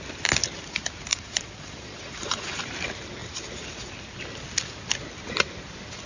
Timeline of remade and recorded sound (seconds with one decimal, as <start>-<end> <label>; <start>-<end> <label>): 0.0-1.1 recorded; 1.1-2.6 remade; 2.6-6.1 recorded